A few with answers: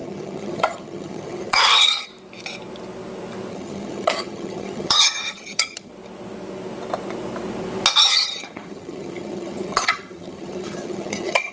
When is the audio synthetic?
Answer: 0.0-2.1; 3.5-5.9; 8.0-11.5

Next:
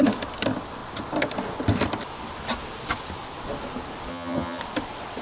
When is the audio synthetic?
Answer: 4.1-4.6

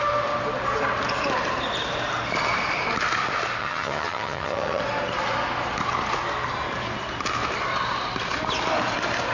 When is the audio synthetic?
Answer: 3.6-4.8

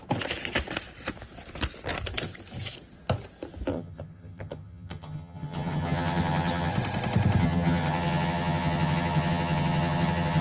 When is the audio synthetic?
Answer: 3.7-6.7; 7.4-10.4

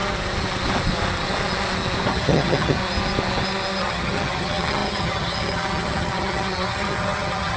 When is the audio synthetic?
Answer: 2.1-2.8; 3.8-7.6